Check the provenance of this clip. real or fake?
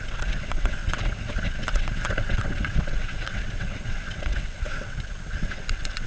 fake